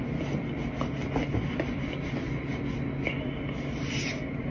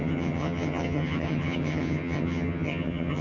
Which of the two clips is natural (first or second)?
first